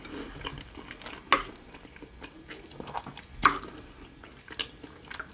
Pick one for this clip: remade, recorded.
recorded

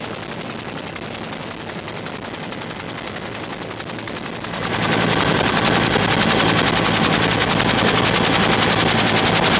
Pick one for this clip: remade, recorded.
recorded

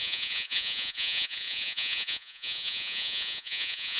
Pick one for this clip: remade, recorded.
remade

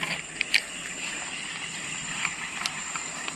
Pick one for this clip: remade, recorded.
recorded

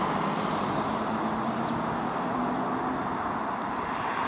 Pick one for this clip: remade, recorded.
recorded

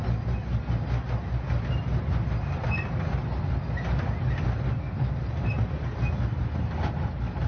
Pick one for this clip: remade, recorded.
recorded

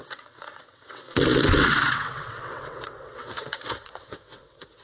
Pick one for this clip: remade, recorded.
remade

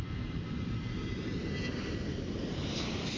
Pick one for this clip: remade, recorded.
recorded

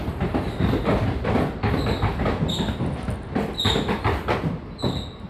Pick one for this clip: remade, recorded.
recorded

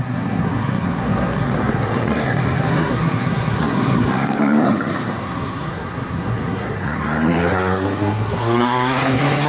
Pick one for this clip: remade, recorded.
remade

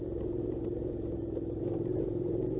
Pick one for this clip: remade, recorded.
remade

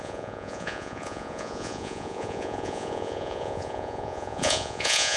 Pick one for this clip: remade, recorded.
remade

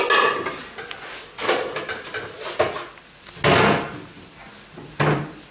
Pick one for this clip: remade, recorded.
recorded